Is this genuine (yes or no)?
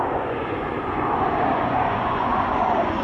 no